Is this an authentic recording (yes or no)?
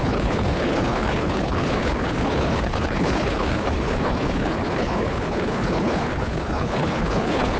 no